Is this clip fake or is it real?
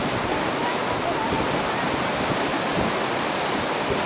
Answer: real